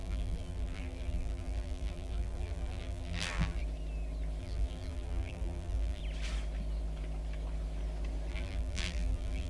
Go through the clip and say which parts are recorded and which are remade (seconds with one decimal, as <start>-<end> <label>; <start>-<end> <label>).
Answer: 0.0-3.6 remade; 3.6-4.4 recorded; 4.4-6.0 remade; 6.0-8.3 recorded; 8.3-9.5 remade